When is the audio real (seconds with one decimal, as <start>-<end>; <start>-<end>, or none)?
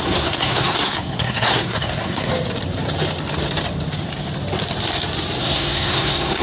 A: 2.3-5.4